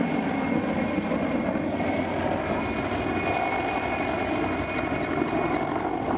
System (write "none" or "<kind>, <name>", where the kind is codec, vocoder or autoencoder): none